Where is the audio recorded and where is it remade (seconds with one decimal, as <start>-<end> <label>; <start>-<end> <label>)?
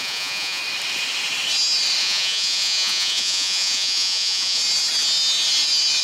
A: 0.0-0.6 remade; 0.6-2.0 recorded; 2.0-4.6 remade; 4.6-6.0 recorded